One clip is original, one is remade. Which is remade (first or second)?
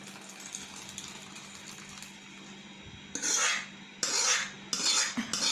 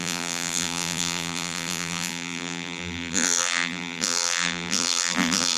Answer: second